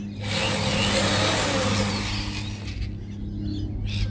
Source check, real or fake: real